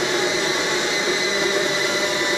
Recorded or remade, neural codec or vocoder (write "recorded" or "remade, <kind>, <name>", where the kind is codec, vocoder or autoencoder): remade, vocoder, BigVGAN v2